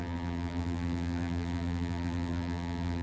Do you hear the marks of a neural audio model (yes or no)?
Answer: yes